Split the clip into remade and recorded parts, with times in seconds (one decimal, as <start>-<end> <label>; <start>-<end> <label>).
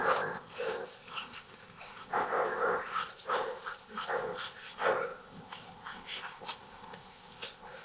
0.0-7.8 remade